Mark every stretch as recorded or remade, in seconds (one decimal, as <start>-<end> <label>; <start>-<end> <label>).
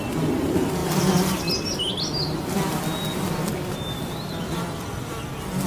0.0-0.8 recorded; 0.8-1.4 remade; 1.4-5.7 recorded